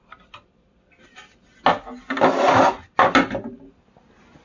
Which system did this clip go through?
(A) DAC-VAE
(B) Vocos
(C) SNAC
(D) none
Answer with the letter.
D